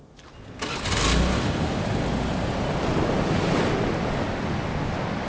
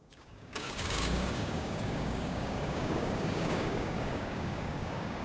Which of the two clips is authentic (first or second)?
first